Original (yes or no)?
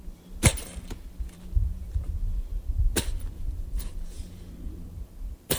no